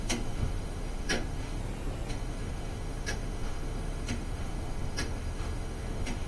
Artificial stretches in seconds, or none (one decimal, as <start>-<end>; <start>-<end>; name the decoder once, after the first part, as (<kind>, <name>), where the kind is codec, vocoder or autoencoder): 0.0-1.6 (autoencoder, DAC-VAE); 2.1-6.3